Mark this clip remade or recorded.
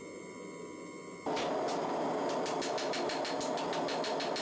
recorded